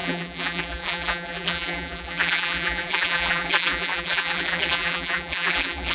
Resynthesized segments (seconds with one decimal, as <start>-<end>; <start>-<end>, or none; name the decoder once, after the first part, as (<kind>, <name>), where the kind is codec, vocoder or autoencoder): 0.0-5.9 (vocoder, BigVGAN v2)